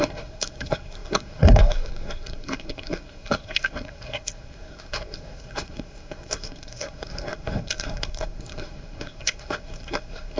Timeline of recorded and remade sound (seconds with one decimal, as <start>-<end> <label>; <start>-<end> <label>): 0.0-10.4 remade